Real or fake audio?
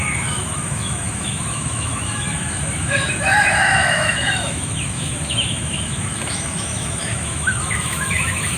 fake